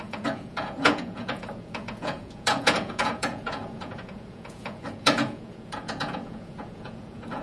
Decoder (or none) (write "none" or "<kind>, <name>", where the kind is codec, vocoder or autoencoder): vocoder, Vocos